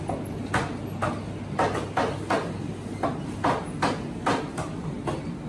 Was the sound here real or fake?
real